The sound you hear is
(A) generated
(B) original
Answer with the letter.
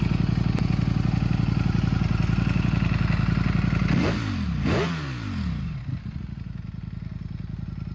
B